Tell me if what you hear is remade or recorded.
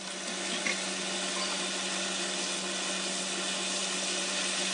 recorded